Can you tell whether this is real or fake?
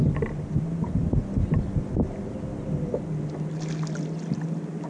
real